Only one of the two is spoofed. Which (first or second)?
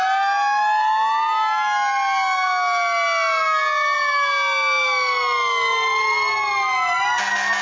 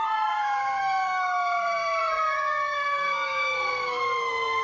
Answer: second